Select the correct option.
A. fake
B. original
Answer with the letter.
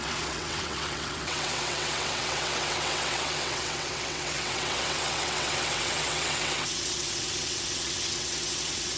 A